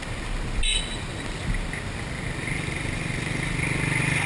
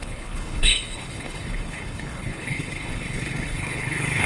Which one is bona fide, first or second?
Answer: first